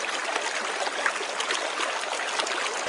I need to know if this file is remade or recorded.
recorded